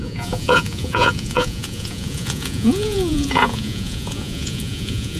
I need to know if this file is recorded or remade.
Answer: remade